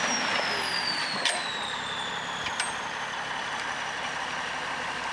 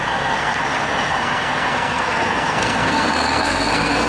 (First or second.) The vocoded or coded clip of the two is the second